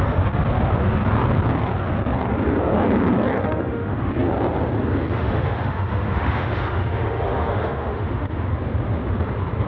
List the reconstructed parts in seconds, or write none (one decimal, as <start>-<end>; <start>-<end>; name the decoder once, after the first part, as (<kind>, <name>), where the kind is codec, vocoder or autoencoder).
3.4-4.1 (autoencoder, DAC-VAE); 5.1-8.5